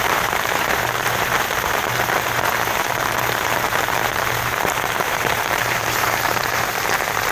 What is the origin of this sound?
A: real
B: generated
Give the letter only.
B